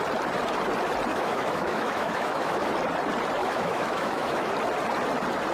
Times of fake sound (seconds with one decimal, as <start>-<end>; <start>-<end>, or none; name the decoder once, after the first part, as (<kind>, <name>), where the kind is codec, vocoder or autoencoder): 1.1-2.7 (autoencoder, DAC-VAE); 3.4-4.5